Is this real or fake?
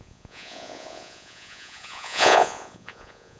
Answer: fake